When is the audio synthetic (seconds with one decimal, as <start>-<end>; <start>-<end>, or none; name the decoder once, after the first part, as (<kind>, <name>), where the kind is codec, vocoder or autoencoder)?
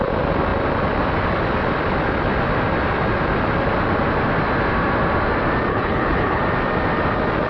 5.7-6.4 (codec, HILCodec)